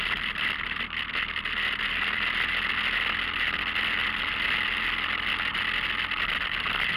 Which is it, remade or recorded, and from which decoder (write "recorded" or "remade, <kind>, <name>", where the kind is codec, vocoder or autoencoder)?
recorded